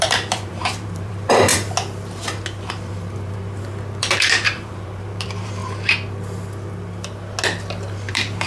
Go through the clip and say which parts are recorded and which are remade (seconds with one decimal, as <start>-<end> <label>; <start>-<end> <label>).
0.0-1.5 remade; 1.5-2.7 recorded; 2.7-3.4 remade; 3.4-4.0 recorded; 4.0-5.6 remade; 5.6-8.1 recorded; 8.1-8.5 remade